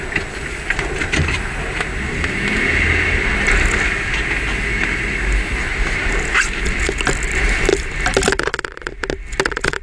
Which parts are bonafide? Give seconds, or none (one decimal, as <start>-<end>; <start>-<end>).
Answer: 0.0-9.8